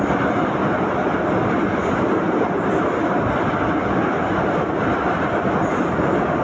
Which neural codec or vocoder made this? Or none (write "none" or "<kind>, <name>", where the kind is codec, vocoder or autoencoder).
none